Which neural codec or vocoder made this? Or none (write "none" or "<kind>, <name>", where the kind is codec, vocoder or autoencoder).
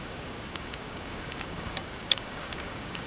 codec, DAC